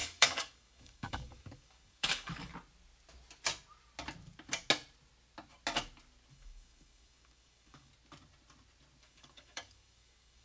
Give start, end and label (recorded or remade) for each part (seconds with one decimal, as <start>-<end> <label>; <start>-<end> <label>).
0.0-2.5 remade; 2.5-6.3 recorded; 6.3-7.9 remade; 7.9-9.0 recorded; 9.0-10.4 remade